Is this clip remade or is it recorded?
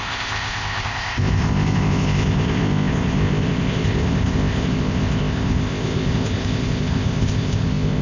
remade